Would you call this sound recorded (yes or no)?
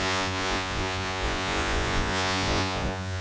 no